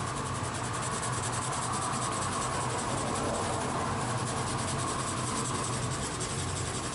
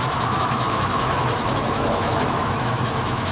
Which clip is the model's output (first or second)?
second